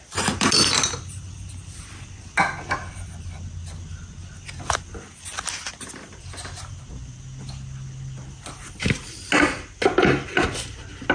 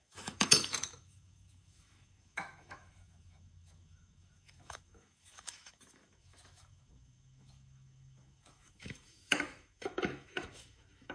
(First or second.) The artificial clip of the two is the second